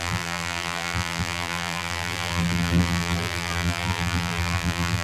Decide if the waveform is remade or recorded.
remade